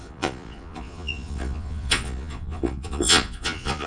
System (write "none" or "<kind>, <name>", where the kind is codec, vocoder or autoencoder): vocoder, Vocos